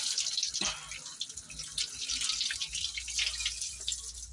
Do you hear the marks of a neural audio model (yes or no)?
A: no